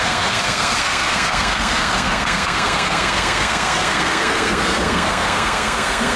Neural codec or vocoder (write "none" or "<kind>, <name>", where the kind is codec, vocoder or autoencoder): codec, SNAC